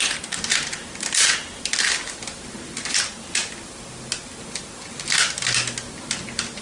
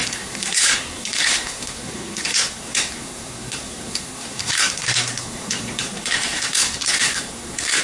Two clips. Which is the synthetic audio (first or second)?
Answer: second